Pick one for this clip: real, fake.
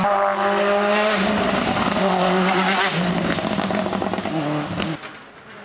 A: real